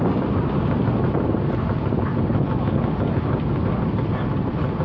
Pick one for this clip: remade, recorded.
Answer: recorded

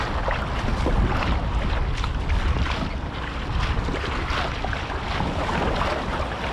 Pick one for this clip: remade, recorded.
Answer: recorded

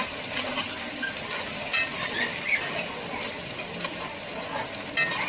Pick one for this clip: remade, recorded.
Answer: recorded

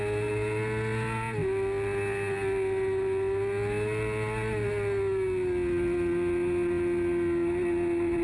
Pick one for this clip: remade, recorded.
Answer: recorded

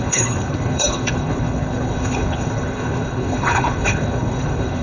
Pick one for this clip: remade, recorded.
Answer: remade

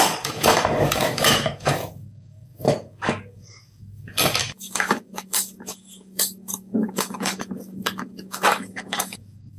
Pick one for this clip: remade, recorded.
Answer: remade